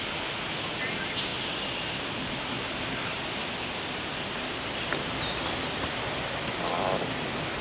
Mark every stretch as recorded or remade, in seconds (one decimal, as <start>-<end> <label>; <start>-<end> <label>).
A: 0.0-7.6 recorded